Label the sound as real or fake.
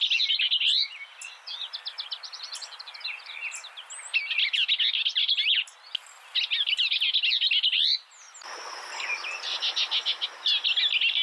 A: real